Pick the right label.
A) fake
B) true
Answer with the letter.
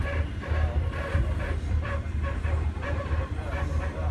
A